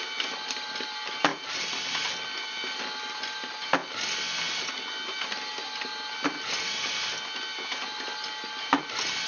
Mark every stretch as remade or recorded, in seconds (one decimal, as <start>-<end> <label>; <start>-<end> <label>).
0.0-9.3 recorded